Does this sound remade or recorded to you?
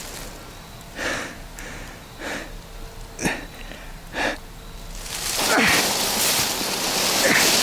recorded